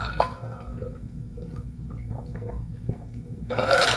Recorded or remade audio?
remade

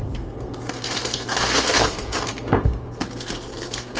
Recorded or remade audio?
remade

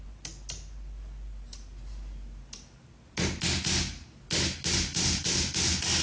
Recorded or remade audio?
recorded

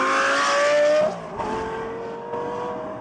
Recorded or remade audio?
recorded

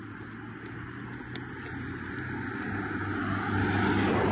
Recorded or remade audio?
recorded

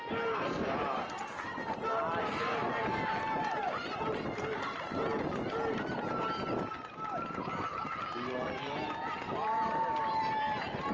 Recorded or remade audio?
recorded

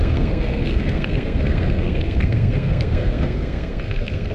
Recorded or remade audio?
remade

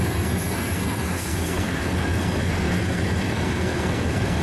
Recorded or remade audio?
remade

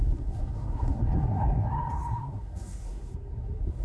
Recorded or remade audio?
remade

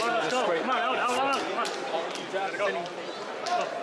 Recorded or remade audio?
recorded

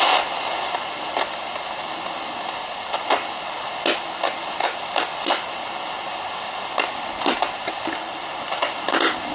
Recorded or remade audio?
recorded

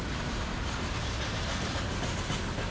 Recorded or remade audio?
recorded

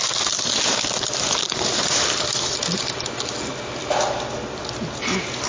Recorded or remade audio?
recorded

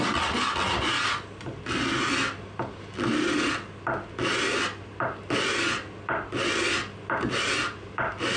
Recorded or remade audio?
recorded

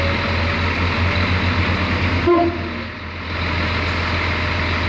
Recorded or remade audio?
recorded